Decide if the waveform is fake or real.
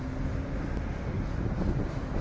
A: real